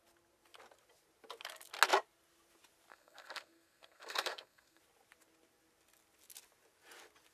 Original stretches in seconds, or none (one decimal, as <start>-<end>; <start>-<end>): 0.0-2.9; 4.8-7.3

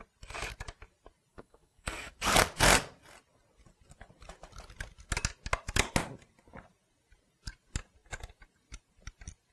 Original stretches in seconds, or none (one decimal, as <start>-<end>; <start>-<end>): 0.0-1.3; 2.1-9.5